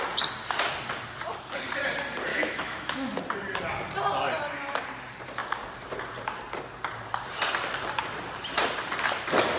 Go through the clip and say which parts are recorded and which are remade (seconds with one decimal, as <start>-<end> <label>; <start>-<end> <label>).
0.0-2.3 recorded; 2.3-3.2 remade; 3.2-9.6 recorded